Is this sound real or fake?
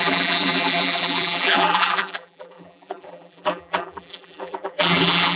fake